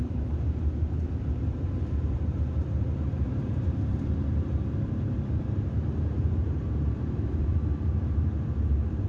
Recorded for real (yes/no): no